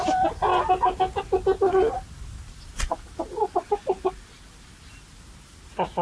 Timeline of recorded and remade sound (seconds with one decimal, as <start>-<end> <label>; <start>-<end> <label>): 0.0-6.0 recorded